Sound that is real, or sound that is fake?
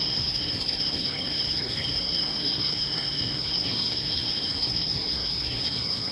fake